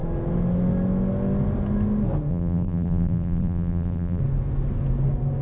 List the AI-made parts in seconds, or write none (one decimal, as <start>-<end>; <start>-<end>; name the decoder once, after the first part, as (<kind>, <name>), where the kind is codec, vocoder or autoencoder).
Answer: 2.3-4.2 (vocoder, BigVGAN v2)